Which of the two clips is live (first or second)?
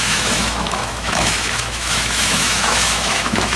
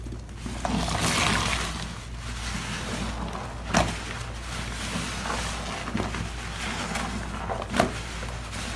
second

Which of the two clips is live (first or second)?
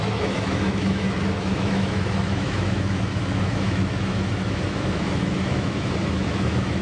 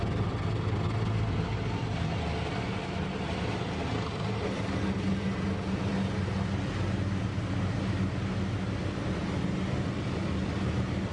second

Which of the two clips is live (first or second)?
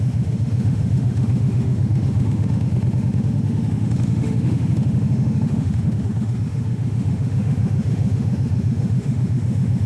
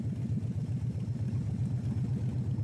second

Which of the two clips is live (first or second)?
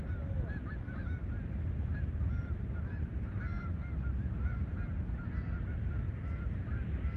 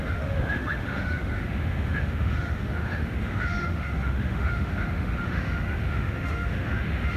first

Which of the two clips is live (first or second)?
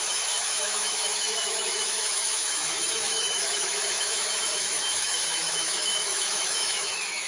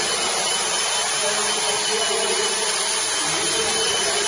second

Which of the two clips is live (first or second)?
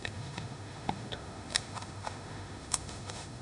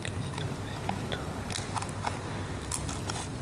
second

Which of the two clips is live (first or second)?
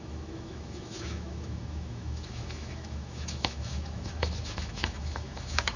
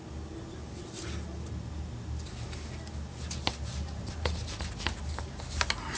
second